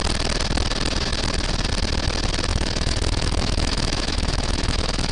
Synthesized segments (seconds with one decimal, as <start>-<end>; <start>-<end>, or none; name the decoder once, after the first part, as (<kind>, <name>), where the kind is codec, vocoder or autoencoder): 2.5-5.1 (autoencoder, DAC-VAE)

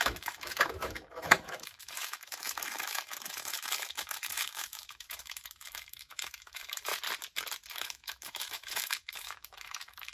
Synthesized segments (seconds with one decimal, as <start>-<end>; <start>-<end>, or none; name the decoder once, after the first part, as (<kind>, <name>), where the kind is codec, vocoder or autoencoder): 0.0-6.9 (autoencoder, DAC-VAE); 7.7-10.1

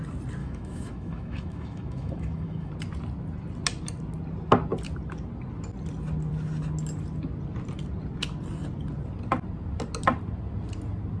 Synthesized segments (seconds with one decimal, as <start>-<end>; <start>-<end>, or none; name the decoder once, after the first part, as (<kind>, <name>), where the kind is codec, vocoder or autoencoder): 0.4-2.7 (autoencoder, DAC-VAE)